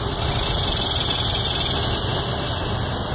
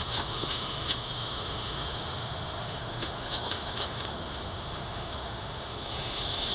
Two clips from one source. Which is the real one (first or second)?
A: first